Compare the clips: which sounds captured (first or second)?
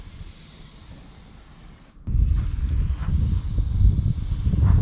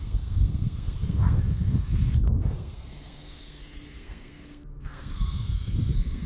first